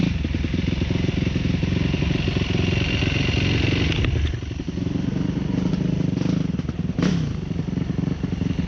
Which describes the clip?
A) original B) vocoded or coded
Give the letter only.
A